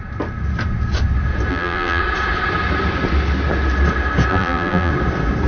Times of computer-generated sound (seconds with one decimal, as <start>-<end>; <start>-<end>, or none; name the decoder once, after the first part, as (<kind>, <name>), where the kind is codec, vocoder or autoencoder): 1.5-2.0 (vocoder, BigVGAN v2); 4.3-4.9